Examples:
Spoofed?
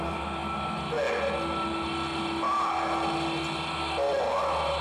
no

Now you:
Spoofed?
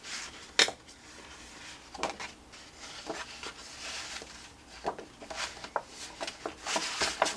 no